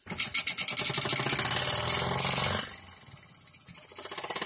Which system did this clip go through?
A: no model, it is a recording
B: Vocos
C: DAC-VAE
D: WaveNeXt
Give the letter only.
A